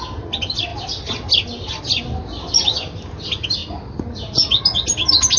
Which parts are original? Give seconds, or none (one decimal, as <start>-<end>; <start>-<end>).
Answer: 0.0-5.4